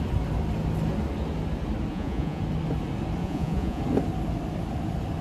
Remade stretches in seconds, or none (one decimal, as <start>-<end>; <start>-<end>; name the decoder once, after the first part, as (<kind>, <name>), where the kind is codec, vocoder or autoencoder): 1.9-2.4 (vocoder, Vocos); 3.2-3.8